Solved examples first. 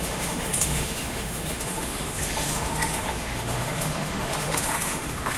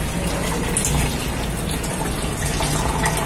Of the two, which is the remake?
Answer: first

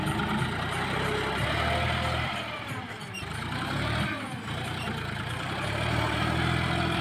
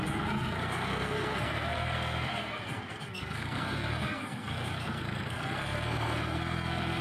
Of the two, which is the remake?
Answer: second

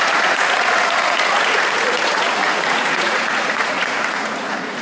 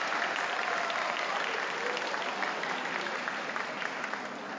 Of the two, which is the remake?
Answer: first